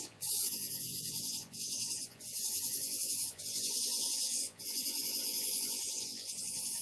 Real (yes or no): no